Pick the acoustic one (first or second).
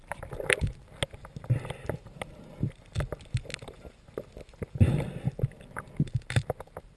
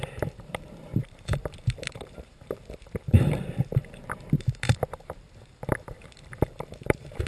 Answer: first